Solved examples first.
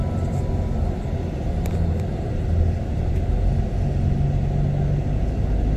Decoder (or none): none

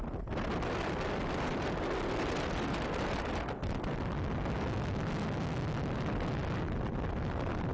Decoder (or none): none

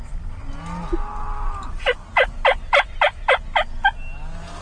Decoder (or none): none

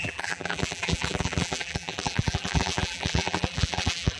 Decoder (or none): vocoder, BigVGAN v2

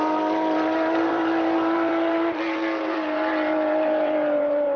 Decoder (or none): vocoder, BigVGAN v2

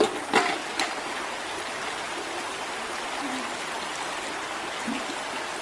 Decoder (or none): none